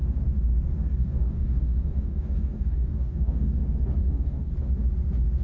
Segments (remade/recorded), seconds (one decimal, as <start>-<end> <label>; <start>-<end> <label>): 0.0-1.0 recorded; 1.0-3.6 remade; 3.6-4.0 recorded; 4.0-4.5 remade; 4.5-5.4 recorded

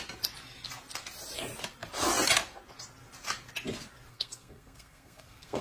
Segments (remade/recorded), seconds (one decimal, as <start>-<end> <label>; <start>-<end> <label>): 0.0-4.1 recorded; 4.1-5.6 remade

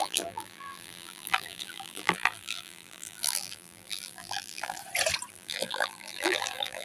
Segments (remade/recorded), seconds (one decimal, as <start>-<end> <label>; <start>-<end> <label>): 0.0-4.8 remade; 4.8-5.3 recorded; 5.3-6.8 remade

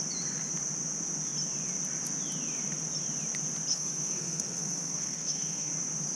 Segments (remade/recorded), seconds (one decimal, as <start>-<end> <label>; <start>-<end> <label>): 0.0-3.7 recorded; 3.7-5.7 remade; 5.7-6.2 recorded

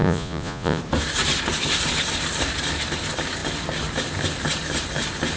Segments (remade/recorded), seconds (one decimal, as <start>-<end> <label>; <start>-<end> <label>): 0.0-0.8 remade; 0.8-5.4 recorded

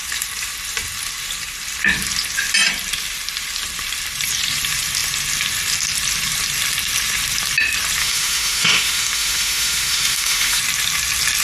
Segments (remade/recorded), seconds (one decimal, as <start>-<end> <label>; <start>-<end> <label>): 0.0-8.0 recorded; 8.0-10.6 remade; 10.6-11.4 recorded

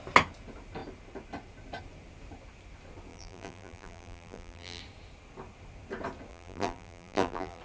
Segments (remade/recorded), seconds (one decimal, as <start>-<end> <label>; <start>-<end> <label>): 0.0-3.1 recorded; 3.1-4.8 remade; 4.8-6.3 recorded; 6.3-7.6 remade